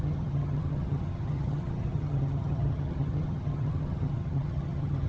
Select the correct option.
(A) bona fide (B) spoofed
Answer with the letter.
B